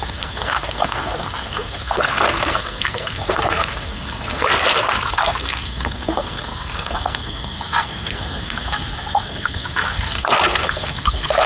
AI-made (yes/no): yes